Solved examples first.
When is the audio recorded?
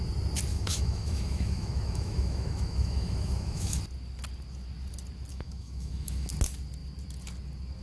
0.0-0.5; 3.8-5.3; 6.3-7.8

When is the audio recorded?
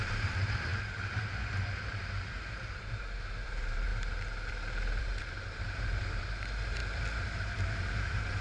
0.7-1.9; 3.9-5.0; 6.8-7.8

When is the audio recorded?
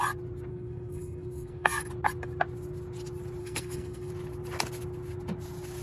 0.0-0.5; 1.9-3.4; 4.1-5.8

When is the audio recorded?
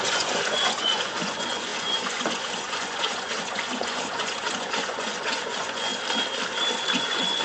5.9-6.9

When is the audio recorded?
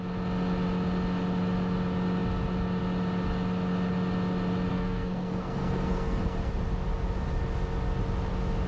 0.0-4.7; 6.5-8.7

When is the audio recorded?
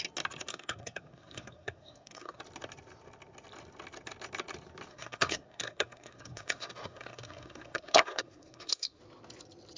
0.0-0.5; 2.4-4.9; 9.0-9.8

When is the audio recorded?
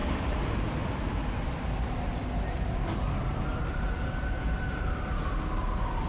0.0-6.1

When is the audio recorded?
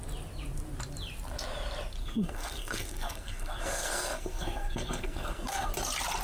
0.0-2.0; 5.7-6.2